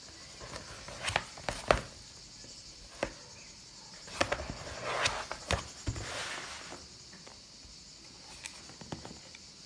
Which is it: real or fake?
real